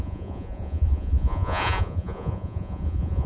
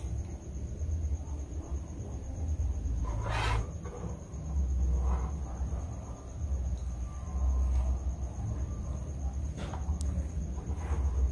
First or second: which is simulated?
first